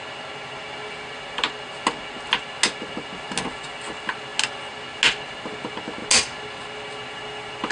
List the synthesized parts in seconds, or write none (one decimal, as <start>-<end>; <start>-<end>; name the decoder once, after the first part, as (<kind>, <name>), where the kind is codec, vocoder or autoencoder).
none